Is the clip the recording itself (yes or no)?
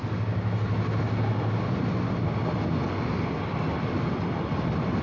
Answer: yes